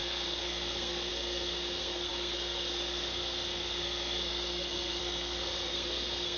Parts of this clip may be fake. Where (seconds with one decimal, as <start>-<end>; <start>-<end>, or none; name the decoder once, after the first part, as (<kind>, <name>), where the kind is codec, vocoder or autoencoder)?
0.0-6.4 (codec, SNAC)

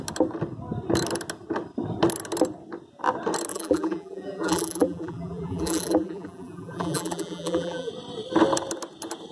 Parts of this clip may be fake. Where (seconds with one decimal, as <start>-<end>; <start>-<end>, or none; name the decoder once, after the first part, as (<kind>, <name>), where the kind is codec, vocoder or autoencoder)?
3.5-7.9 (vocoder, BigVGAN v2)

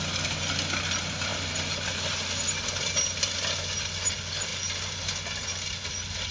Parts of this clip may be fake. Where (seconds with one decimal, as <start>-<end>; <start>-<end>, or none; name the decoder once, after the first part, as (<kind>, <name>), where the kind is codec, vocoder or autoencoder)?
none

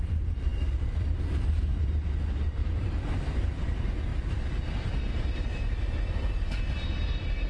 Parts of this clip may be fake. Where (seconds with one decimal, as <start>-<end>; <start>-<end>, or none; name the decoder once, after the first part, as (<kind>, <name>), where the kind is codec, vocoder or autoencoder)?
2.6-3.6 (vocoder, BigVGAN v2)

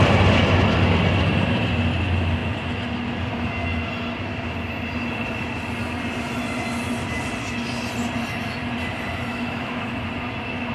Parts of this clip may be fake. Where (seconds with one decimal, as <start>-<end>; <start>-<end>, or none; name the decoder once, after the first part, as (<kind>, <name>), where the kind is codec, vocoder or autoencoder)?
9.3-10.0 (autoencoder, DAC-VAE)

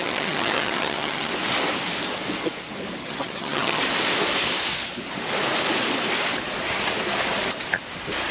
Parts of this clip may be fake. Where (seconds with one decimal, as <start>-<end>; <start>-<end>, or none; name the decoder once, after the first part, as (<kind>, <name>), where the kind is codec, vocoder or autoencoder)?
0.0-1.3 (vocoder, HiFi-GAN); 3.0-3.8

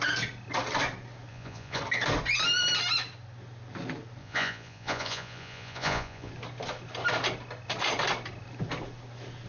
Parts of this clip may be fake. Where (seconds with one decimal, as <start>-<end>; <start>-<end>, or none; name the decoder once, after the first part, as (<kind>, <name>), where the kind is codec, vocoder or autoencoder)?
1.3-1.8 (vocoder, Vocos); 4.2-6.3

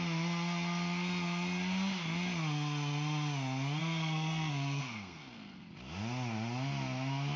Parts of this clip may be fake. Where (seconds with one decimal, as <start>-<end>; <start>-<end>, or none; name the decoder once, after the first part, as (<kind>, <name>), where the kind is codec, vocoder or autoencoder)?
3.8-5.7 (codec, SNAC)